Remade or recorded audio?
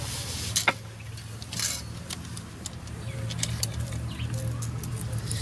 recorded